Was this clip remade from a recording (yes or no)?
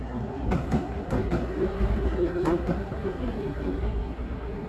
yes